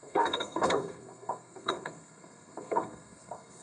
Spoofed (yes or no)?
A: yes